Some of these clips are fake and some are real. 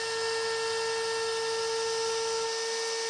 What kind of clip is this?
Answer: real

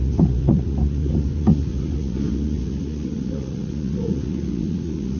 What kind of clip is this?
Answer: fake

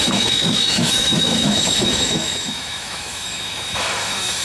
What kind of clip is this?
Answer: fake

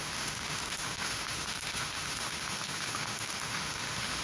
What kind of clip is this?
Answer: fake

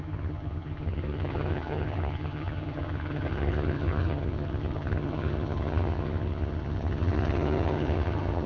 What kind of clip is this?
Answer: fake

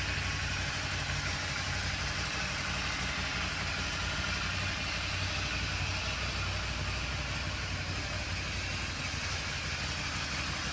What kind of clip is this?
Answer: real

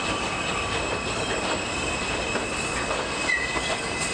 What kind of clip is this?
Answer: real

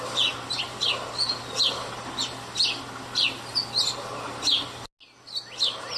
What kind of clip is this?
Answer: real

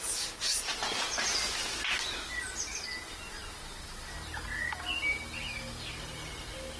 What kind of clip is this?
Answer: real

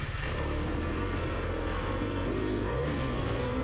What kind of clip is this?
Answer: fake